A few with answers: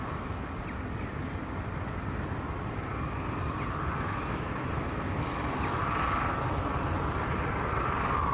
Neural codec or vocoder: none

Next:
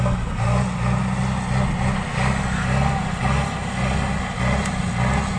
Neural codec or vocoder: none